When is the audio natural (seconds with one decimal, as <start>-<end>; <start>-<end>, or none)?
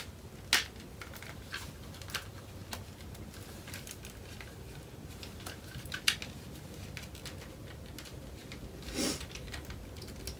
0.0-10.4